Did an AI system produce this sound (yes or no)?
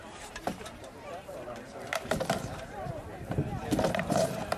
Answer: yes